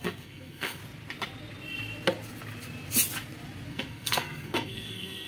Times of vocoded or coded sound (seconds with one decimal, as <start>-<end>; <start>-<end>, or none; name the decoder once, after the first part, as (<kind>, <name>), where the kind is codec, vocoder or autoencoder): 0.0-0.8 (codec, SNAC); 3.7-5.3